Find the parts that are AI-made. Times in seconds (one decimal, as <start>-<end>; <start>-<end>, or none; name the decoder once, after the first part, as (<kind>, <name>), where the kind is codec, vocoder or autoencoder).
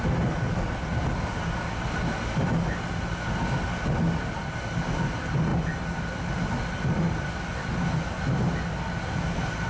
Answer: none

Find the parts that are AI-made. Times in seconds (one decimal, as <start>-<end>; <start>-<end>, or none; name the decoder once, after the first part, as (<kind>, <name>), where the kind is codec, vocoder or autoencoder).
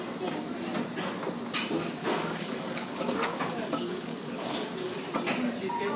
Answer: 2.0-5.0 (codec, DAC)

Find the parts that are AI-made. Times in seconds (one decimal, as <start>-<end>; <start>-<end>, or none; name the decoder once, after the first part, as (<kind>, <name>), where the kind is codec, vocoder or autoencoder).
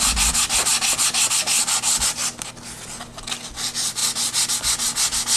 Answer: none